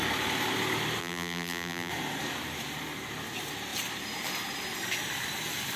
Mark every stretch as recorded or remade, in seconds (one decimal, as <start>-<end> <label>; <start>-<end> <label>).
0.0-1.0 recorded; 1.0-1.9 remade; 1.9-5.8 recorded